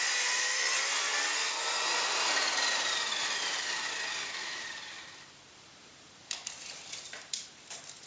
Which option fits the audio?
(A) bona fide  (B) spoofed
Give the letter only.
B